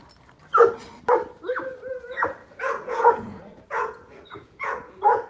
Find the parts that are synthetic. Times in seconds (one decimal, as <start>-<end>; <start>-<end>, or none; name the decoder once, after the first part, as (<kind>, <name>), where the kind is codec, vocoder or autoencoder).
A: 2.4-5.3 (vocoder, Vocos)